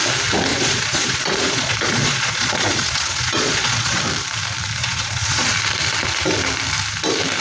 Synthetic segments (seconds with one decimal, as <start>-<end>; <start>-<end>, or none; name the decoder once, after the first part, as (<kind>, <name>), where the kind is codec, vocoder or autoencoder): 0.5-4.0 (vocoder, Vocos); 4.8-5.5